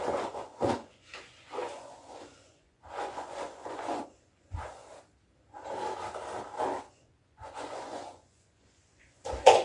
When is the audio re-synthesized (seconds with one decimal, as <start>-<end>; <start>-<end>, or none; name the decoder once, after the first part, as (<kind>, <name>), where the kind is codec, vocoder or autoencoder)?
0.0-4.8 (vocoder, Vocos); 6.8-9.6